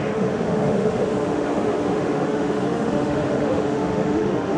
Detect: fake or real fake